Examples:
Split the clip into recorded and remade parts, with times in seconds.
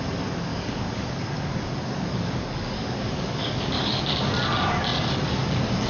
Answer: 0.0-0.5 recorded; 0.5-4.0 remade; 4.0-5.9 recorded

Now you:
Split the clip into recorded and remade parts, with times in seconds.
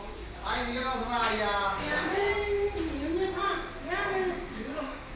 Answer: 0.0-0.8 remade; 0.8-1.8 recorded; 1.8-2.3 remade; 2.3-4.8 recorded; 4.8-5.2 remade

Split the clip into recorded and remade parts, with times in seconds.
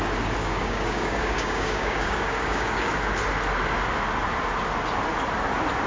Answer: 0.0-0.4 recorded; 0.4-2.9 remade; 2.9-5.9 recorded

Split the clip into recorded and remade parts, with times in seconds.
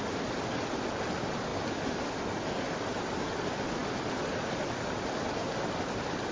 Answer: 0.0-6.3 recorded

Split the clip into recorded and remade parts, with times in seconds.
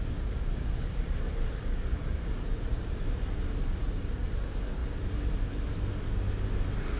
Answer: 0.0-1.0 remade; 1.0-1.5 recorded; 1.5-2.2 remade; 2.2-7.0 recorded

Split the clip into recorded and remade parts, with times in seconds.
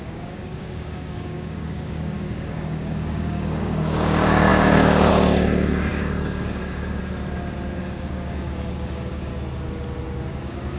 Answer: 0.0-7.0 remade; 7.0-7.8 recorded; 7.8-9.3 remade; 9.3-10.3 recorded; 10.3-10.8 remade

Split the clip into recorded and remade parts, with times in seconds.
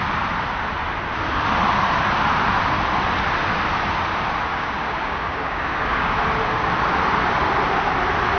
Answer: 0.0-4.5 recorded; 4.5-6.1 remade; 6.1-8.4 recorded